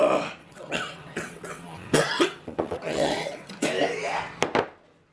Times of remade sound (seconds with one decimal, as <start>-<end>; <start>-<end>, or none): 0.4-3.5